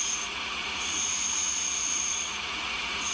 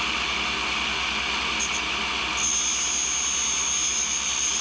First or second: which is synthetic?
first